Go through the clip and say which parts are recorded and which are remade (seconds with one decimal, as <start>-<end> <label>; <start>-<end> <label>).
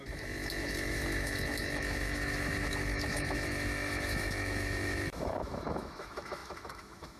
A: 0.0-7.2 remade